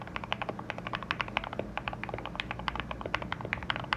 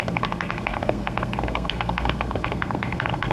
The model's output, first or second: second